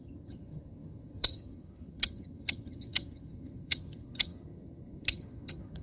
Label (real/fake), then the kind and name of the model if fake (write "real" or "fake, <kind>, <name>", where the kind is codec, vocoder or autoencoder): fake, vocoder, HiFi-GAN